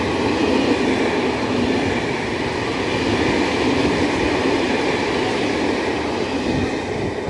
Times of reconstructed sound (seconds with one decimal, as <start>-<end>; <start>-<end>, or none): 3.8-4.7